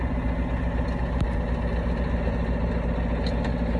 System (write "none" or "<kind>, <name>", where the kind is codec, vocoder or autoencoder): none